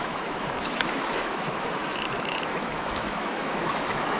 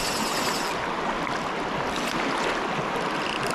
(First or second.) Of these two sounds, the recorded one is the second